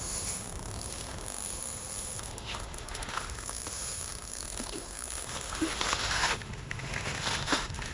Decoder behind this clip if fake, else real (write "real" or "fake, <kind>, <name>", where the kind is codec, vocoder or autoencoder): fake, autoencoder, DAC-VAE